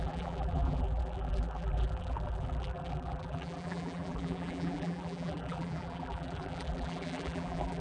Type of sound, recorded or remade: remade